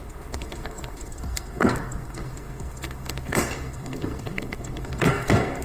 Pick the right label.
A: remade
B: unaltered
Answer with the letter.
A